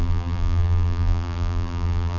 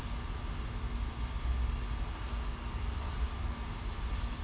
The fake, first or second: first